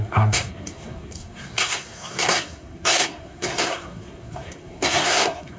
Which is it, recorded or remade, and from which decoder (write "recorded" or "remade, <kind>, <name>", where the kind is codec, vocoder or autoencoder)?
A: remade, codec, SNAC